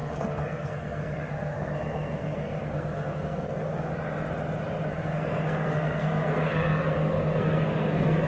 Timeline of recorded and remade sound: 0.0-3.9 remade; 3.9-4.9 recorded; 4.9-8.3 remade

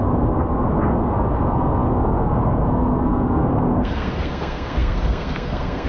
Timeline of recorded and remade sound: 0.0-5.9 remade

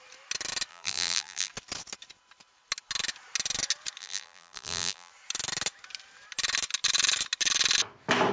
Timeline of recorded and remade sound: 0.0-0.7 recorded; 0.7-1.5 remade; 1.5-4.0 recorded; 4.0-5.1 remade; 5.1-8.3 recorded

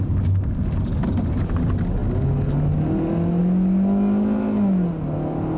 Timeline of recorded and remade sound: 0.0-5.6 recorded

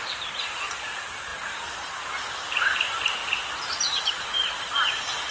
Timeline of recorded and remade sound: 0.0-5.3 recorded

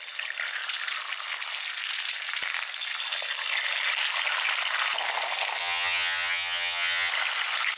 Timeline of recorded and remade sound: 0.0-5.6 recorded; 5.6-7.1 remade; 7.1-7.8 recorded

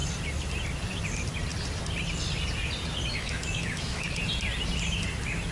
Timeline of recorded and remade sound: 0.0-3.1 recorded; 3.1-4.2 remade; 4.2-5.5 recorded

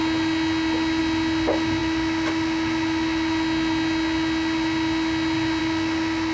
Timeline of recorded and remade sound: 0.0-6.3 recorded